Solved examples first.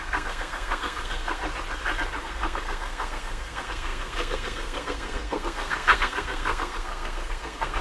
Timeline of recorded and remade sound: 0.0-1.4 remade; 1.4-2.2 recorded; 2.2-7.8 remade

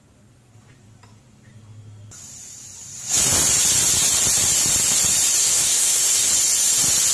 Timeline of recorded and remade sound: 0.0-5.4 recorded; 5.4-6.3 remade; 6.3-7.1 recorded

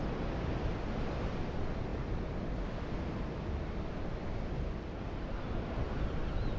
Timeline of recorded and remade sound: 0.0-6.6 recorded